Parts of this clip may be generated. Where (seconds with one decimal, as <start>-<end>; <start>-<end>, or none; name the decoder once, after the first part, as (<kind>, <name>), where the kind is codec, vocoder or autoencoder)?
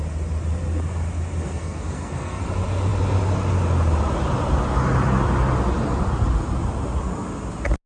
1.4-2.4 (codec, SNAC)